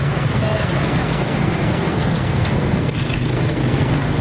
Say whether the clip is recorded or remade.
remade